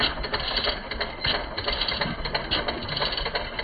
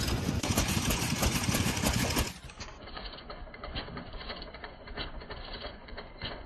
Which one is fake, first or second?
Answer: second